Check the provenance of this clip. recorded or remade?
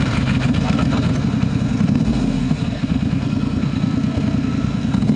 remade